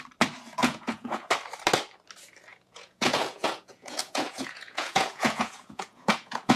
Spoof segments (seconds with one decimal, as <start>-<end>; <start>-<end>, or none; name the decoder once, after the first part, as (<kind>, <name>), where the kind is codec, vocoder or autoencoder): 0.6-1.3 (vocoder, Vocos); 2.5-6.6